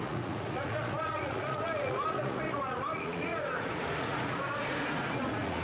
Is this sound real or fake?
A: fake